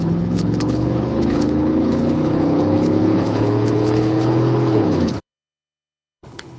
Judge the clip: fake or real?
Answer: fake